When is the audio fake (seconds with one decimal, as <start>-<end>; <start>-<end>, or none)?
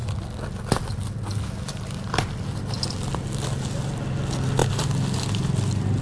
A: none